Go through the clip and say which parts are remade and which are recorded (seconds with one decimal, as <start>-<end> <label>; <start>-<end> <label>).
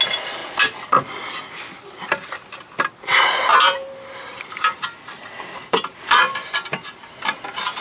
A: 0.0-3.1 recorded; 3.1-7.3 remade; 7.3-7.8 recorded